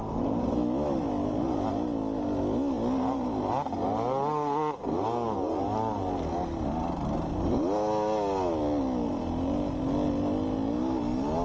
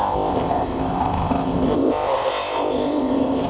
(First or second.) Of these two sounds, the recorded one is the first